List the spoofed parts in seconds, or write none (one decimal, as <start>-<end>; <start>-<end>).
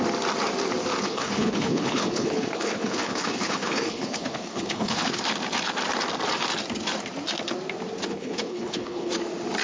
1.0-5.2; 8.1-9.1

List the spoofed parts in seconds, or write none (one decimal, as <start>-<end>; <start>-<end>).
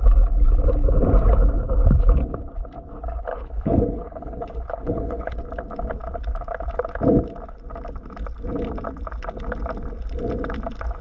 3.3-5.3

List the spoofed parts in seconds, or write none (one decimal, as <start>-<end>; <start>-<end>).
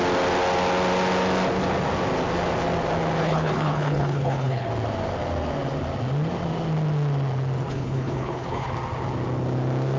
3.2-4.7; 7.7-8.7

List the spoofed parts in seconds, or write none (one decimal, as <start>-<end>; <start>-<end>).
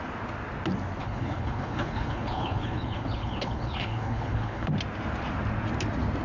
1.0-4.7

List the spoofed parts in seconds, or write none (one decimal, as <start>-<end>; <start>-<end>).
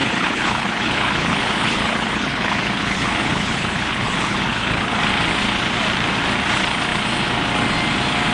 0.0-5.0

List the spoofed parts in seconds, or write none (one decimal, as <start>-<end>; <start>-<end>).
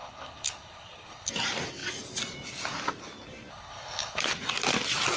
0.0-1.3; 3.5-4.2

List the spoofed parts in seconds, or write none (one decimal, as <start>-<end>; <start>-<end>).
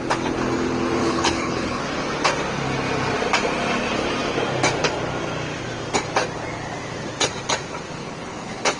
1.0-1.8; 8.0-8.8